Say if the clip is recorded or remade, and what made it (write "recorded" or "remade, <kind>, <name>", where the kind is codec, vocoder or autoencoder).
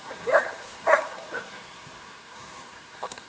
remade, codec, SNAC